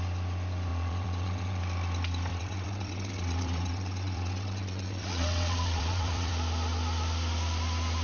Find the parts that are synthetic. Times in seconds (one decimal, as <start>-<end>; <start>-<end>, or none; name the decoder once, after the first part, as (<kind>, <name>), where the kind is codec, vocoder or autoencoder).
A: 0.7-1.6 (vocoder, WaveNeXt); 2.3-6.3